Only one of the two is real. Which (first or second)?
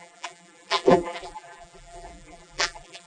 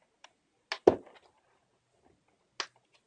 second